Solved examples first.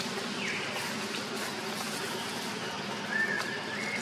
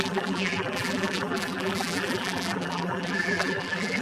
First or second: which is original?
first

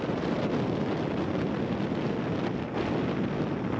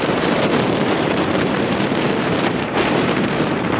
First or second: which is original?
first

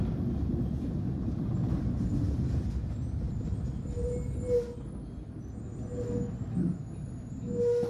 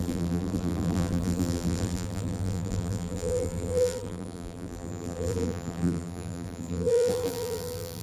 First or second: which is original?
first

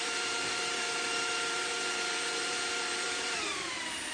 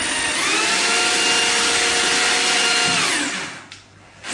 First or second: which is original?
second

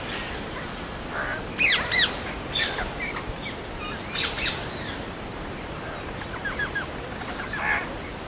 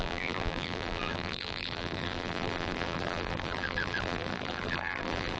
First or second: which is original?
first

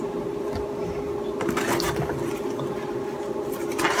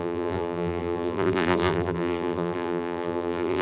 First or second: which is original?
first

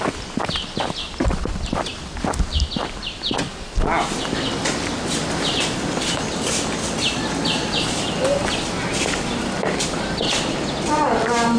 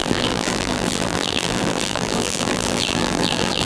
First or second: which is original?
first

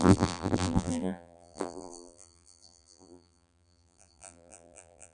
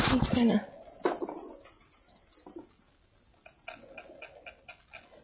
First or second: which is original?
second